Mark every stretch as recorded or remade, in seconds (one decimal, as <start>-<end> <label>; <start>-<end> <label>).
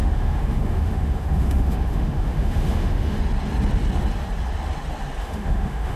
0.0-3.2 remade; 3.2-5.2 recorded; 5.2-6.0 remade